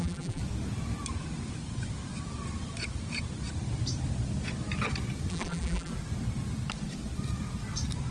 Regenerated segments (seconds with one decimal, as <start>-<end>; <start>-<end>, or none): 0.0-0.4; 5.3-5.9